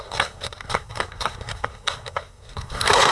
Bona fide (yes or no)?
no